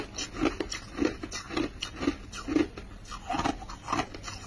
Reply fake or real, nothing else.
real